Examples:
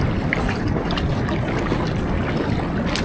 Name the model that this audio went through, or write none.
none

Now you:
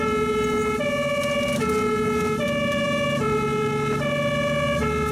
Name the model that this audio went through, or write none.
none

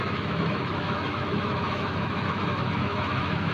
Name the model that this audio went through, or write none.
autoencoder, DAC-VAE